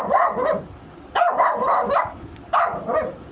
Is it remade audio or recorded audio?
recorded